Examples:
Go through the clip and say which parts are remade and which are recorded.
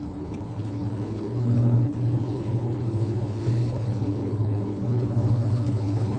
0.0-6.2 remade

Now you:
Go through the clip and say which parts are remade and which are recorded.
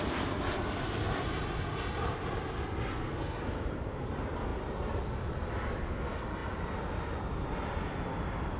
0.0-2.9 recorded; 2.9-3.4 remade; 3.4-8.6 recorded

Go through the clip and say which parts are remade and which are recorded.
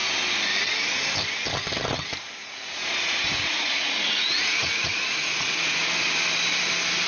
0.0-2.4 recorded; 2.4-5.9 remade; 5.9-7.1 recorded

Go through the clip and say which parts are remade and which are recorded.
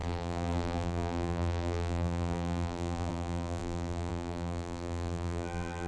0.0-5.9 remade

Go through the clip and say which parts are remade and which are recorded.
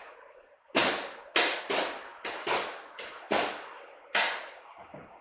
0.0-5.2 recorded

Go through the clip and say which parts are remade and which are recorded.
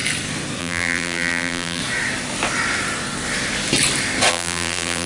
0.0-0.6 recorded; 0.6-1.8 remade; 1.8-4.3 recorded; 4.3-5.1 remade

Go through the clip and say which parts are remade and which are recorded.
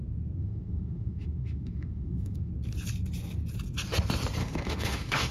0.0-0.4 recorded; 0.4-2.5 remade; 2.5-4.4 recorded; 4.4-5.3 remade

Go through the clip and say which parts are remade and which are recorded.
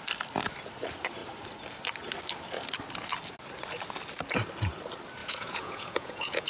0.0-5.2 recorded; 5.2-6.5 remade